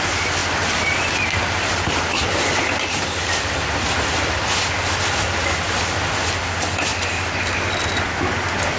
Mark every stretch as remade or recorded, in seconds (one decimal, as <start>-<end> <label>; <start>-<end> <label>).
0.0-8.8 recorded